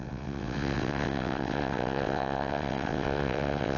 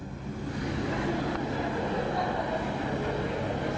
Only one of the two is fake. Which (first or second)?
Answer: first